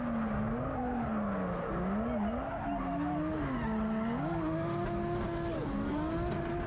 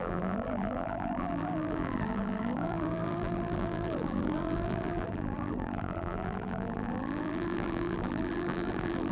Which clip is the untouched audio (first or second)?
first